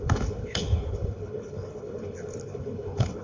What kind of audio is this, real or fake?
fake